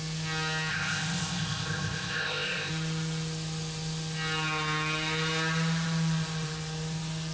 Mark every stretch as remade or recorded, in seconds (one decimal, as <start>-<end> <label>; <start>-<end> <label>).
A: 0.0-0.7 recorded; 0.7-2.7 remade; 2.7-7.3 recorded